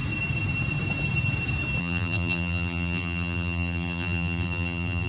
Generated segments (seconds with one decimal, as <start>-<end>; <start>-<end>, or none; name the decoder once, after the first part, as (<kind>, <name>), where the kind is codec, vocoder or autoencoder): 1.8-5.1 (vocoder, BigVGAN v2)